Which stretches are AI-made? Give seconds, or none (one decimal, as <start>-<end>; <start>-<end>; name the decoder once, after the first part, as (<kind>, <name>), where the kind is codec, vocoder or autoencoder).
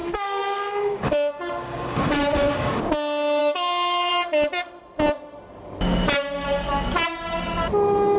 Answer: 0.0-2.9 (codec, DAC); 3.4-4.1